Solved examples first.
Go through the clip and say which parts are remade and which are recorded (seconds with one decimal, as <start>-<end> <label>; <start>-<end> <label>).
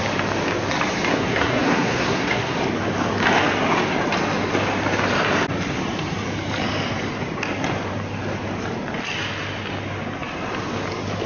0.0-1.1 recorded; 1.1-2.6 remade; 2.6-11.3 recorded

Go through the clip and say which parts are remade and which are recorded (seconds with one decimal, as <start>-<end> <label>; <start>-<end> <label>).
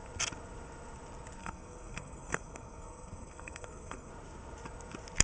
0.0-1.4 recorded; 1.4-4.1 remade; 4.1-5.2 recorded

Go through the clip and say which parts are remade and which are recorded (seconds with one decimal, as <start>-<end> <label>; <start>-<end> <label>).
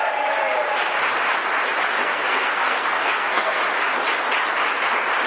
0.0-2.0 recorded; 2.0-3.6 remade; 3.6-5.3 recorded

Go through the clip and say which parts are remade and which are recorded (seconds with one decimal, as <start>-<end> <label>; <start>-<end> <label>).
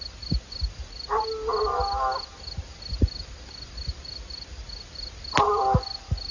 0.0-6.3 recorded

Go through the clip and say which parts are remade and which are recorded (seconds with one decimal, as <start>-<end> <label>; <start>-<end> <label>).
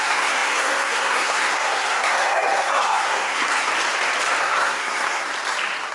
0.0-3.7 remade; 3.7-4.4 recorded; 4.4-5.3 remade; 5.3-5.9 recorded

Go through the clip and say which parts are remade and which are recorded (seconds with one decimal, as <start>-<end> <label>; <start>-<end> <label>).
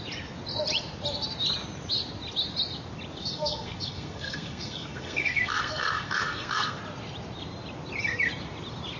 0.0-3.2 recorded; 3.2-6.8 remade; 6.8-9.0 recorded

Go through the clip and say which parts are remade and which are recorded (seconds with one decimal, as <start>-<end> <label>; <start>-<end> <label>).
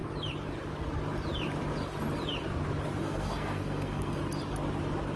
0.0-3.0 recorded; 3.0-4.2 remade; 4.2-5.2 recorded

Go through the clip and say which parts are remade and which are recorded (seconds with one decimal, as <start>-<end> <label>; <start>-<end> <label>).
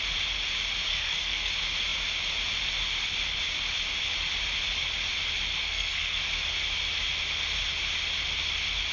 0.0-0.9 recorded; 0.9-1.5 remade; 1.5-5.6 recorded; 5.6-6.2 remade; 6.2-8.9 recorded